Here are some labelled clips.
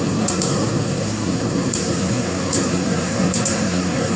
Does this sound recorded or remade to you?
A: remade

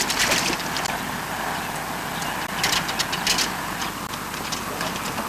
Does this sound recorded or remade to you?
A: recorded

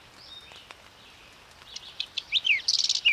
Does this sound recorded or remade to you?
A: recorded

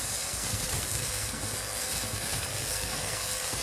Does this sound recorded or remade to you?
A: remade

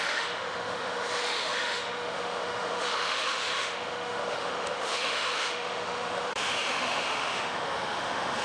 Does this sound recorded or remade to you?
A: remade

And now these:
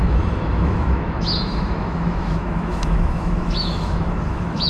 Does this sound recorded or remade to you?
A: remade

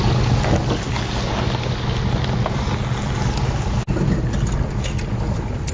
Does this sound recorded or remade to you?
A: recorded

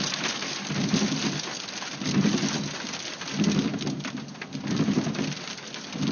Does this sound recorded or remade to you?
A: recorded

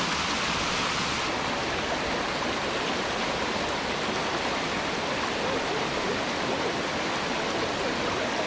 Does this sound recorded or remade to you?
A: recorded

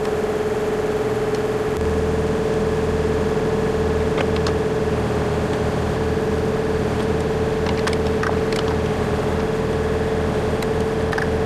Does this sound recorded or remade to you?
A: recorded